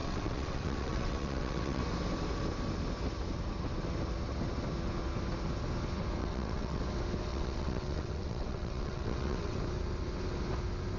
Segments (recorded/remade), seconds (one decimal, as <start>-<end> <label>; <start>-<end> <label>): 0.0-1.8 remade; 1.8-6.2 recorded; 6.2-6.8 remade; 6.8-7.3 recorded; 7.3-9.6 remade; 9.6-11.0 recorded